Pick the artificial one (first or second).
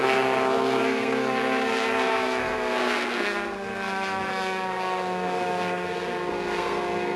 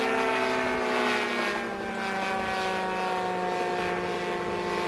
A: first